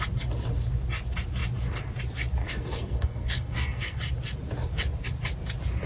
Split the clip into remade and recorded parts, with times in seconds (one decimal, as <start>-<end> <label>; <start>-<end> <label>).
0.0-2.4 recorded; 2.4-4.0 remade; 4.0-5.9 recorded